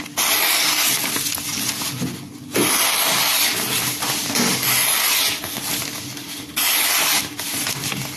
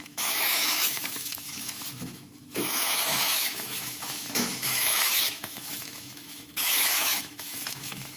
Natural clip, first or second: first